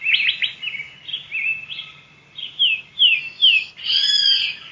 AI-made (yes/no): no